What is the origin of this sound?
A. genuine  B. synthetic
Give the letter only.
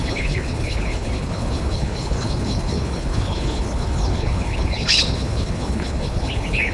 B